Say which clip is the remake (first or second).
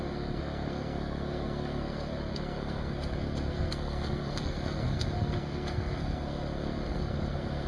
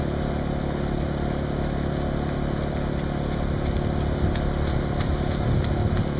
first